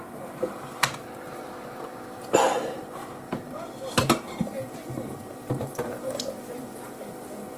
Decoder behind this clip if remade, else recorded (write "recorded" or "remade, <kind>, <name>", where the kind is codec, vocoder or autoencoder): remade, vocoder, BigVGAN v2